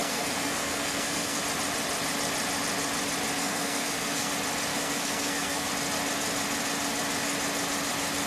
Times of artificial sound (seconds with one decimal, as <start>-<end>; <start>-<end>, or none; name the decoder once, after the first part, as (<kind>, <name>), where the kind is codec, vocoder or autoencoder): 0.0-1.4 (codec, SNAC); 3.4-4.3; 4.7-5.7